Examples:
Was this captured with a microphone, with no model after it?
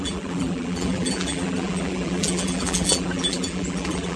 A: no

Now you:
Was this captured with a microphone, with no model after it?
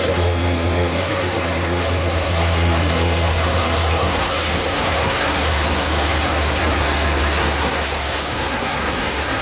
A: no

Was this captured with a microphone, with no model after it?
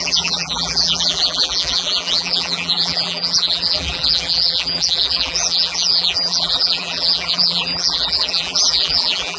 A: no